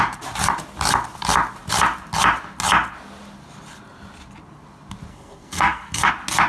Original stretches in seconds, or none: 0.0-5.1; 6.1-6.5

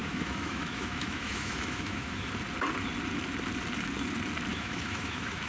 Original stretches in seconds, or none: 2.3-4.5